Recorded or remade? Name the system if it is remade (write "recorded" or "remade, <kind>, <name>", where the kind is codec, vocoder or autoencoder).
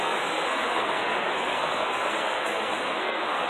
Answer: remade, codec, SNAC